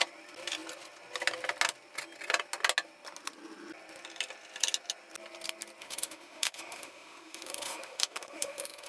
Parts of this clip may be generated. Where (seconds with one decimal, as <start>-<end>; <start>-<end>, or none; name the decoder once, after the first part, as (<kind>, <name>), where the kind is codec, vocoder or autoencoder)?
5.8-8.9 (autoencoder, DAC-VAE)